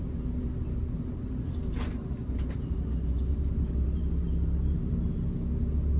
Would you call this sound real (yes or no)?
yes